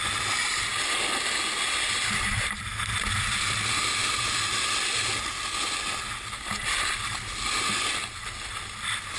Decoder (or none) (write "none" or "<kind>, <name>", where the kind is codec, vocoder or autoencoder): none